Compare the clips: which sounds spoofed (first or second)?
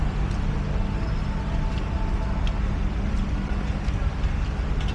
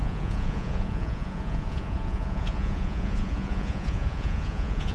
second